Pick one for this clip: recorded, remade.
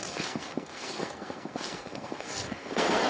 remade